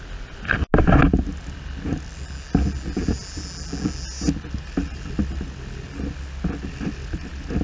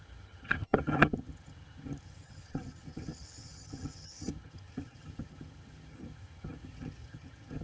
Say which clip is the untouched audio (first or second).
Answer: first